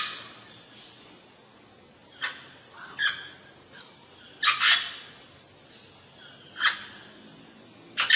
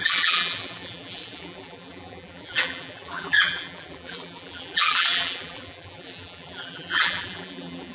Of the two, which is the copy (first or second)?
second